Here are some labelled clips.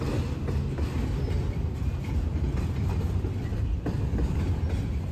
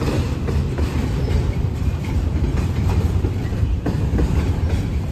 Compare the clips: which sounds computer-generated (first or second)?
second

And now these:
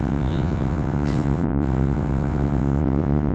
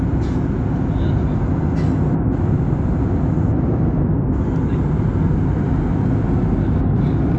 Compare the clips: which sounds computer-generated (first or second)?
first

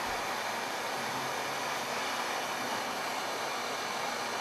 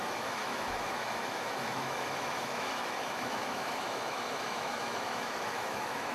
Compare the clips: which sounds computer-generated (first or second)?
second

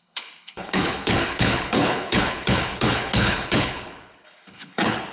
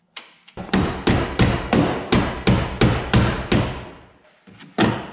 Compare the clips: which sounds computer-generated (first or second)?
first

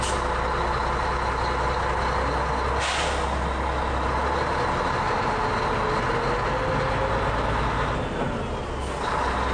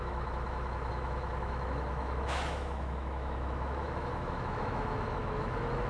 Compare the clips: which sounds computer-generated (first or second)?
second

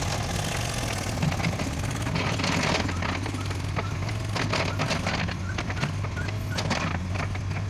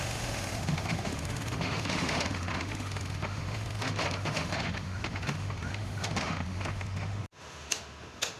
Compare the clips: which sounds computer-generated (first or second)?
second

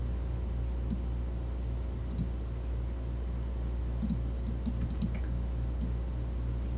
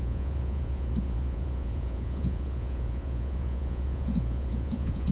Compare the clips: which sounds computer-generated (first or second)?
second